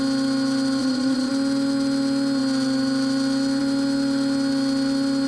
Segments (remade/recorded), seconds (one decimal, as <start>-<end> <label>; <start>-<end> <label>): 0.0-0.8 recorded; 0.8-1.3 remade; 1.3-5.3 recorded